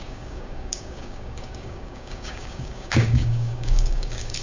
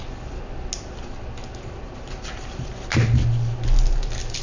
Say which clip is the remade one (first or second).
first